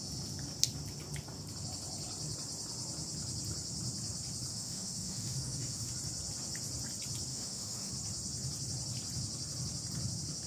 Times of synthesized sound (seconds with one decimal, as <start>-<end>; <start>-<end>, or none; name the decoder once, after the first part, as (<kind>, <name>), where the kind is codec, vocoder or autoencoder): 4.5-5.9 (autoencoder, DAC-VAE); 7.3-7.9